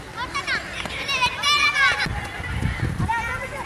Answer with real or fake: real